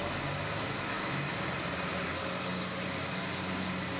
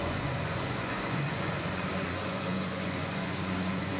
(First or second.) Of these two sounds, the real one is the first